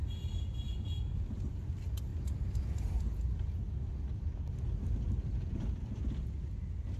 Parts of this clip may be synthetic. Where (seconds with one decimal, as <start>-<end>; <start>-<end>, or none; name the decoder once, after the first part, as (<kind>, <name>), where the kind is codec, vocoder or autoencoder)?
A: none